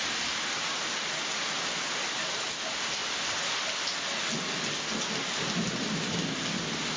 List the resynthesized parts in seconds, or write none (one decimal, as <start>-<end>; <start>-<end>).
none